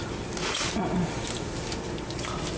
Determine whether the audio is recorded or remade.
recorded